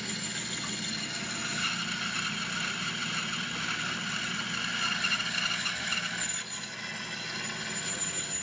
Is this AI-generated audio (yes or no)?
no